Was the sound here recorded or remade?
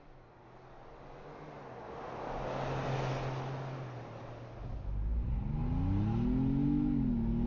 recorded